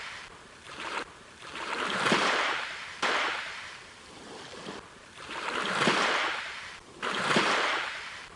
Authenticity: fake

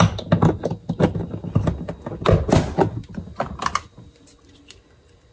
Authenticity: real